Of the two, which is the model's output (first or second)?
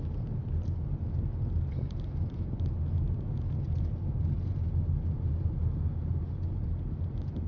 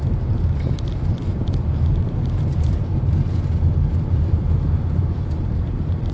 second